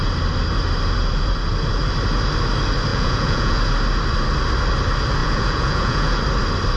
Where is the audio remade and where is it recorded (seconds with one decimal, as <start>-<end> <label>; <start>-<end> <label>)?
0.0-2.9 recorded; 2.9-3.6 remade; 3.6-5.2 recorded; 5.2-6.2 remade; 6.2-6.8 recorded